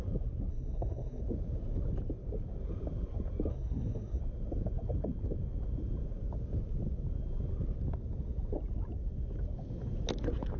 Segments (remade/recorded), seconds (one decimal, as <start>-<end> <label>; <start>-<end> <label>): 0.0-0.5 recorded; 0.5-1.2 remade; 1.2-3.5 recorded; 3.5-4.2 remade; 4.2-10.6 recorded